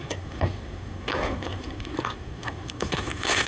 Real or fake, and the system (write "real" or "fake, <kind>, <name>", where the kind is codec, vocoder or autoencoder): fake, codec, SNAC